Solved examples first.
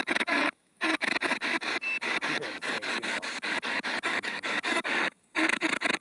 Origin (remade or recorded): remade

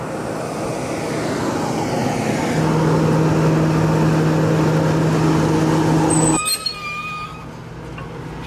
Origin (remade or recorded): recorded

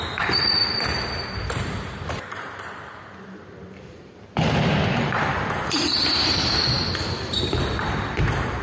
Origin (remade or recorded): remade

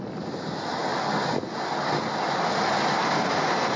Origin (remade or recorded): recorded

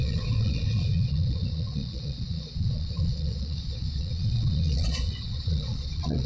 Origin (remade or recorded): remade